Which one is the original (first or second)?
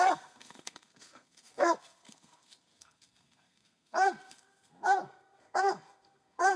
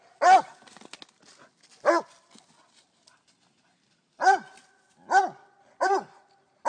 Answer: second